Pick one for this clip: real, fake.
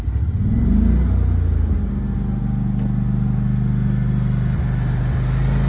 real